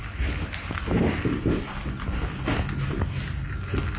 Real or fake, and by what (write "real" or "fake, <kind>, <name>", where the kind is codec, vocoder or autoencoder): real